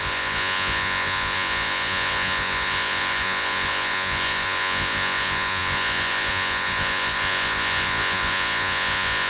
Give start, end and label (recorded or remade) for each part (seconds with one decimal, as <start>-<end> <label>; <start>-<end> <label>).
0.0-9.3 remade